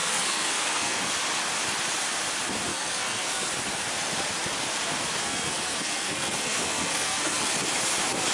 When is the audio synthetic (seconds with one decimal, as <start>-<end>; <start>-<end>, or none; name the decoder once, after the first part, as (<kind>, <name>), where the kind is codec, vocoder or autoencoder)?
0.0-1.0 (codec, SNAC); 2.7-3.5; 5.2-7.5